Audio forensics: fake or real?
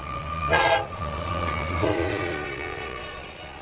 fake